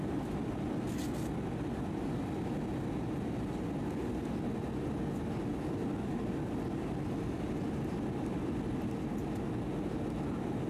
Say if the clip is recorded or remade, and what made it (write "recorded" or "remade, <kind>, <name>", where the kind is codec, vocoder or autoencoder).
recorded